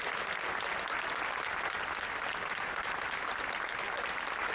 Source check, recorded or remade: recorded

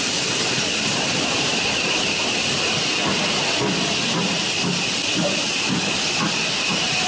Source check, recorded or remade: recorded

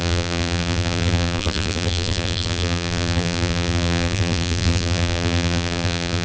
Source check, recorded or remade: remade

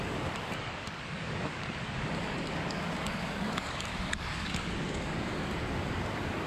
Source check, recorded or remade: remade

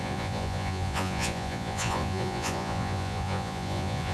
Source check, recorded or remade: remade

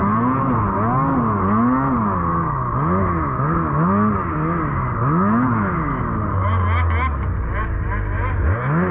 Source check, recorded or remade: recorded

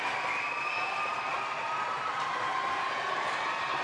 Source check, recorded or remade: remade